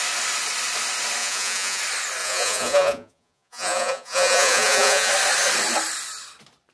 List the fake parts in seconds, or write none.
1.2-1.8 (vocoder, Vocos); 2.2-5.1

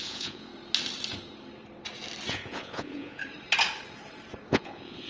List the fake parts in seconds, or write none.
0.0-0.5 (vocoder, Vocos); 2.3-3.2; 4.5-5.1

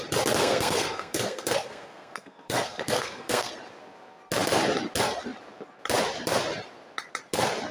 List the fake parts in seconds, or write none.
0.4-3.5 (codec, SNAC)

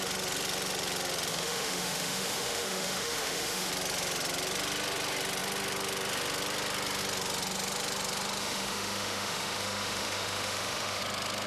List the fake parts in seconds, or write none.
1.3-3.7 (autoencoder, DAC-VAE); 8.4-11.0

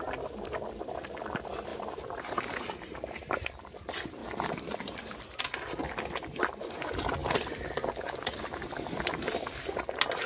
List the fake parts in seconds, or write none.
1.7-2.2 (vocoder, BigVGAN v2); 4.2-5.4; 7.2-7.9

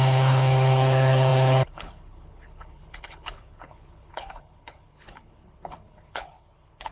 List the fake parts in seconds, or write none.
0.0-6.9 (codec, HILCodec)